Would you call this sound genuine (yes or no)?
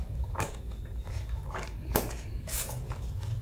no